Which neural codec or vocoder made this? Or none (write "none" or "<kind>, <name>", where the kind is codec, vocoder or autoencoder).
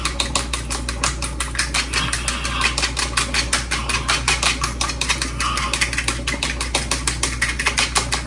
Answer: none